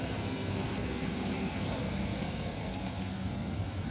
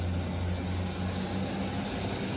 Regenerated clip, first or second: first